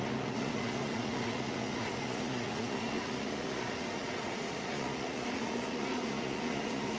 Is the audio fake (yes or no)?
yes